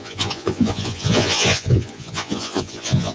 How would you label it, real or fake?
fake